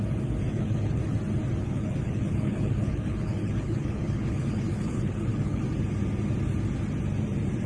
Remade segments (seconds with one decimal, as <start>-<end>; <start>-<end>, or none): 0.5-1.0; 1.6-5.6